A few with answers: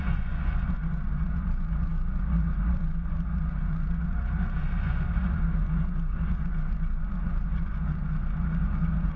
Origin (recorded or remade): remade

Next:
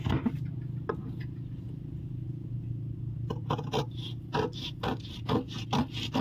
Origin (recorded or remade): recorded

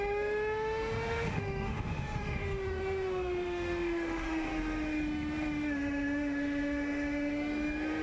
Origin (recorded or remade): remade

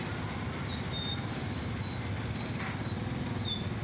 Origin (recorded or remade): recorded